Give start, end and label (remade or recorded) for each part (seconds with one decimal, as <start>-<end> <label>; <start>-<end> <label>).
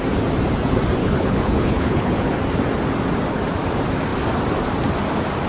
0.0-1.0 recorded; 1.0-2.4 remade; 2.4-5.5 recorded